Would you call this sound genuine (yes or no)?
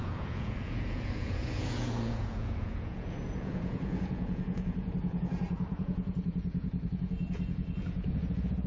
no